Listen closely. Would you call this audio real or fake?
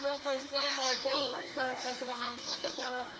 fake